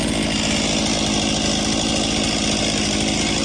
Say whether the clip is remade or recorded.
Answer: recorded